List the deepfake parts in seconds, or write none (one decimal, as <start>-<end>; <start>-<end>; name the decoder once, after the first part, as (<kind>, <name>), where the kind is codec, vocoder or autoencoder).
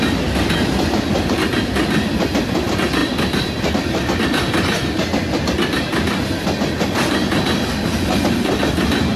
3.0-3.7 (vocoder, BigVGAN v2); 7.2-8.7